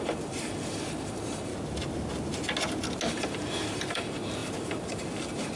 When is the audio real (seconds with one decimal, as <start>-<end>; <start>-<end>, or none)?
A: 1.5-3.1